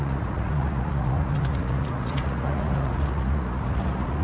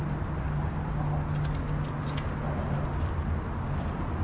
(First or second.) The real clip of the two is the second